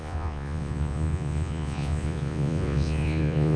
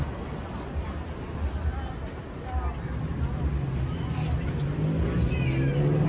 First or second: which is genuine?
second